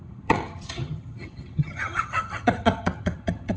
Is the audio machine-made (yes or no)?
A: yes